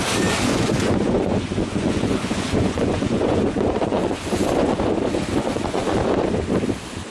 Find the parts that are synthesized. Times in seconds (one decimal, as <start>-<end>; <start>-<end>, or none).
0.5-4.8; 5.3-6.0

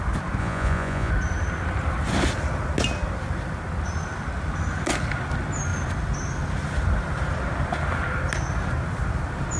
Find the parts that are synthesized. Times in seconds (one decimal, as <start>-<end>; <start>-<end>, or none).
0.4-1.1